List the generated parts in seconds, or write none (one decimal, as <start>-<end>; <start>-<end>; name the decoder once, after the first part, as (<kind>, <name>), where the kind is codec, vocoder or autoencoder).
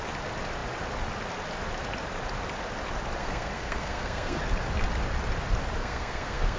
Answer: 3.2-4.4 (codec, SNAC); 5.8-6.6